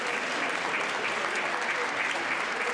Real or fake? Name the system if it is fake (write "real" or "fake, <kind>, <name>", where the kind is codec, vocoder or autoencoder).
real